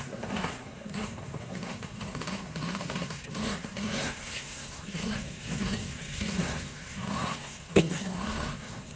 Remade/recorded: remade